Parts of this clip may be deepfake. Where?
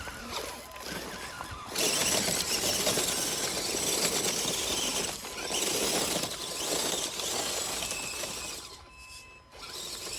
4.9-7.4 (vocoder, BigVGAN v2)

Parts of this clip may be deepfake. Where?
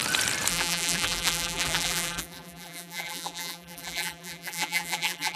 0.5-5.4 (vocoder, BigVGAN v2)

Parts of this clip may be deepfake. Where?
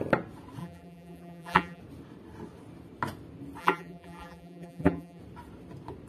0.6-1.8 (vocoder, BigVGAN v2); 3.6-5.2